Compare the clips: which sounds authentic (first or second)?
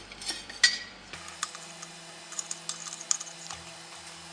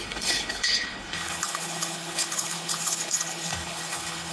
first